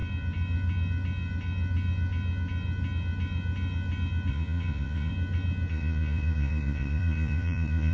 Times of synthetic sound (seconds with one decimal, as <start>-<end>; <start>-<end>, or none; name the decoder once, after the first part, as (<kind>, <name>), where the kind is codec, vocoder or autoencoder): 4.3-5.1 (vocoder, Vocos); 5.7-7.9